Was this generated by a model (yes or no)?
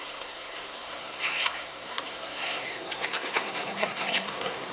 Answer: yes